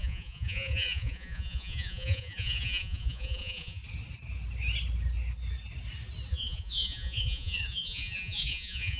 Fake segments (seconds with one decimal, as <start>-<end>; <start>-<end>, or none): 0.0-3.8; 6.3-9.0